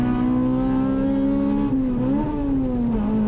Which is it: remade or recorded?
recorded